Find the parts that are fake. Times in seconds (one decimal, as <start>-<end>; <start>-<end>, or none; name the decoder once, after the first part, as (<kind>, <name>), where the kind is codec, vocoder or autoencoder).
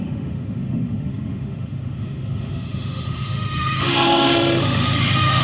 0.0-5.4 (autoencoder, DAC-VAE)